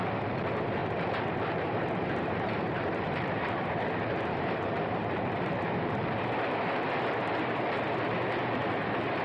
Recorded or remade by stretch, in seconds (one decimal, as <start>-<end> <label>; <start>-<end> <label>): 0.0-0.8 recorded; 0.8-5.9 remade; 5.9-9.2 recorded